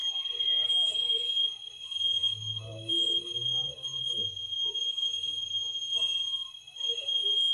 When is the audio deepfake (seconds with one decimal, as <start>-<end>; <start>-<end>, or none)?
0.0-7.5